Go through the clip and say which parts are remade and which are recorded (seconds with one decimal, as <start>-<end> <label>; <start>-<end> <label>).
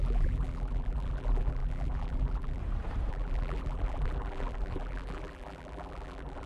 0.0-2.6 remade; 2.6-3.1 recorded; 3.1-6.5 remade